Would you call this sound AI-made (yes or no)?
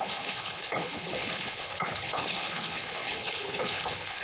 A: yes